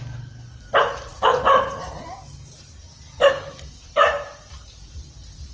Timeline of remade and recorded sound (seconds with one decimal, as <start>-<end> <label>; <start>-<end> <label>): 0.0-1.1 recorded; 1.1-1.9 remade; 1.9-2.3 recorded; 2.3-5.5 remade